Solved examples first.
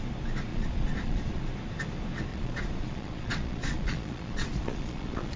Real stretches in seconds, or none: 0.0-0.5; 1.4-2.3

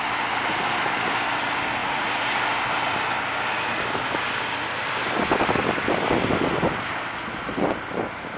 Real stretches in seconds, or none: 0.0-1.8; 2.4-8.4

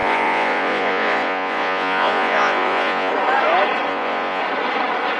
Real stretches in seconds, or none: 3.1-3.9; 4.4-5.2

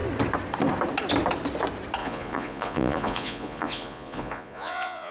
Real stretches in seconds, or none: 0.0-2.0

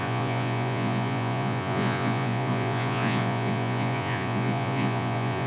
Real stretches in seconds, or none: none

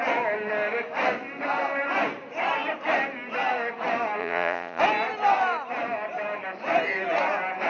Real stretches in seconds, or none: 0.0-4.2; 4.8-7.7